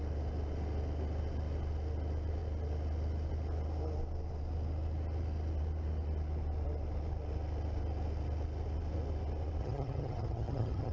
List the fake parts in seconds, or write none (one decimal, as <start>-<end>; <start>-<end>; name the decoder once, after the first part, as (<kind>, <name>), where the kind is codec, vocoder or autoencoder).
9.6-10.9 (vocoder, HiFi-GAN)